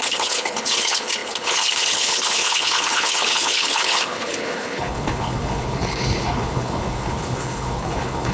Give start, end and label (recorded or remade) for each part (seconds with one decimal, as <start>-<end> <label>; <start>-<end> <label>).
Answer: 0.0-8.3 remade